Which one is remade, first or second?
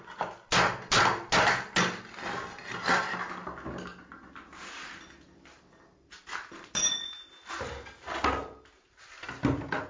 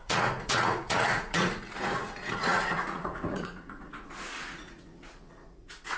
second